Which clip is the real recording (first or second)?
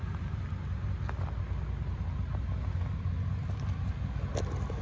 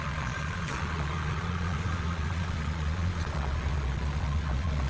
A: first